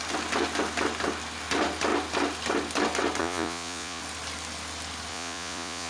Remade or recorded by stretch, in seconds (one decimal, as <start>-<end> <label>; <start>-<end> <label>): 0.0-3.2 recorded; 3.2-4.0 remade; 4.0-5.1 recorded; 5.1-5.9 remade